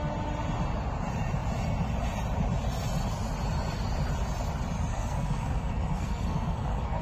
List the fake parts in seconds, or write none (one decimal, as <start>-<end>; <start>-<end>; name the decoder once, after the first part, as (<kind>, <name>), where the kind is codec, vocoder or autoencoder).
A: 4.9-7.0 (codec, SNAC)